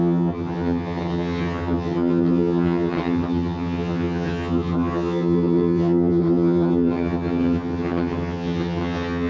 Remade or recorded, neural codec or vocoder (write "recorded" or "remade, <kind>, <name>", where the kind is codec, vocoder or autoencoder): remade, vocoder, HiFi-GAN